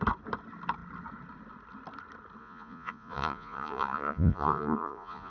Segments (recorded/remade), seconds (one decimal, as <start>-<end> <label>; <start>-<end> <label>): 0.0-2.4 recorded; 2.4-5.3 remade